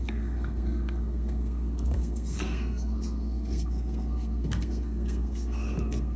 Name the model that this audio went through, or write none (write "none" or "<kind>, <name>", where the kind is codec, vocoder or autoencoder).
codec, SNAC